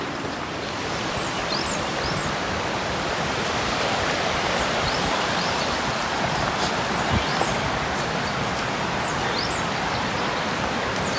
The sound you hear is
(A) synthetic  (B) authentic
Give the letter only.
A